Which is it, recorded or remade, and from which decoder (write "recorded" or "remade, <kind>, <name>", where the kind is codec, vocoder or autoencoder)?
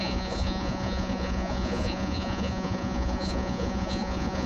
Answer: remade, vocoder, Vocos